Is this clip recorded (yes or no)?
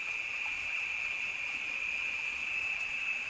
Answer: no